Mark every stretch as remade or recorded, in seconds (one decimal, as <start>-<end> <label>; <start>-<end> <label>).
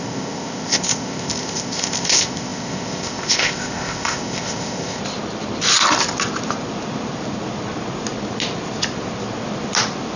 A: 0.0-5.0 remade; 5.0-10.2 recorded